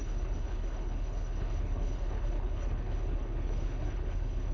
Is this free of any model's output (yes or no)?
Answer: no